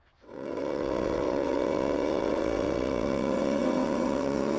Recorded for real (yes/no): no